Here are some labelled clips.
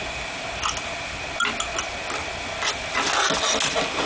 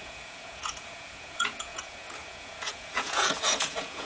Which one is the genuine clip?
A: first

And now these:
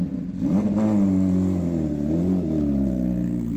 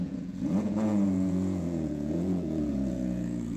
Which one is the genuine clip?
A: first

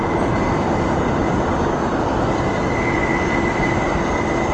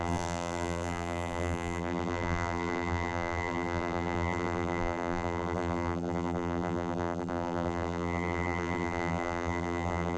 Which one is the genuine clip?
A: first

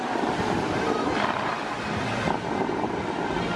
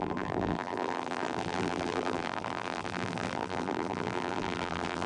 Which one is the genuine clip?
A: first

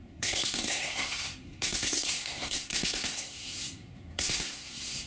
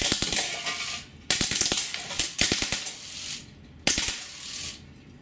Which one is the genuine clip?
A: second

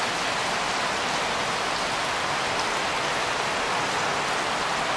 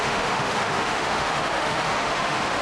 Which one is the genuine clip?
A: first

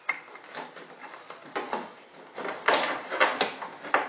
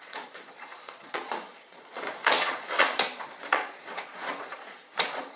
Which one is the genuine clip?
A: first